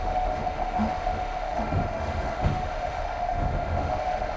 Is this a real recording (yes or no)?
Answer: no